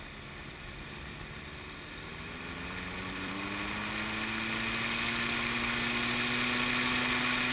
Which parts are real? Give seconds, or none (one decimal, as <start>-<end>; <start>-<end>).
0.0-0.4; 3.3-7.5